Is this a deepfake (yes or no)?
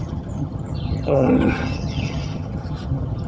yes